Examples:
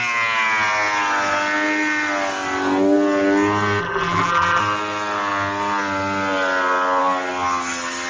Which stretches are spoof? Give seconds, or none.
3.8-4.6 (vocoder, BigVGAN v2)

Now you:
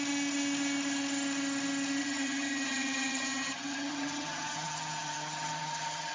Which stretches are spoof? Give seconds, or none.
2.0-6.1 (vocoder, HiFi-GAN)